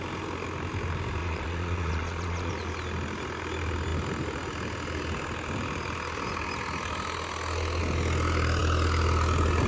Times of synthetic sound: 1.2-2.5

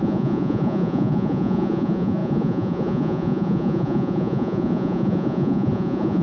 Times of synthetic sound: 0.0-6.2

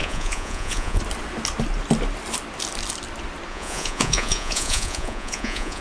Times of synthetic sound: 0.0-1.0; 3.5-5.8

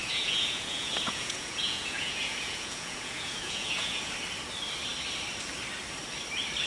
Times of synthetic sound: 0.0-4.0

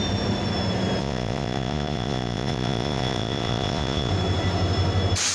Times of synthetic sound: 1.0-4.1

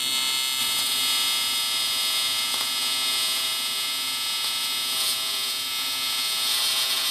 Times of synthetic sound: 0.6-7.1